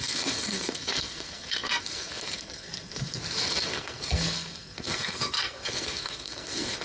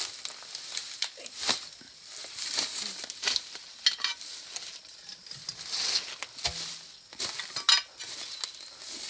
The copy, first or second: first